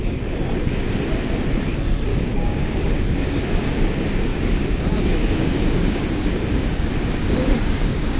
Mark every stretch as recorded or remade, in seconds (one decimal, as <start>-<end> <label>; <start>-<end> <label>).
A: 0.0-2.1 recorded; 2.1-3.4 remade; 3.4-4.3 recorded; 4.3-6.9 remade; 6.9-7.4 recorded; 7.4-8.2 remade